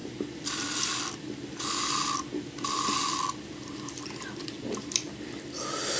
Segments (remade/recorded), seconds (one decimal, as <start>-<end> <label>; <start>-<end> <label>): 0.0-6.0 recorded